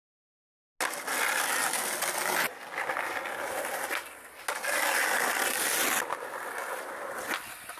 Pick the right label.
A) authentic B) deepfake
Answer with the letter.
A